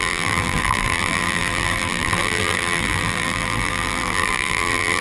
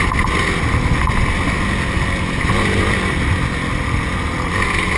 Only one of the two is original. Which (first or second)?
second